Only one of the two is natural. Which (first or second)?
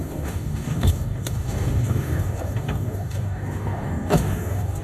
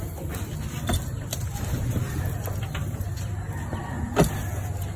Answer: second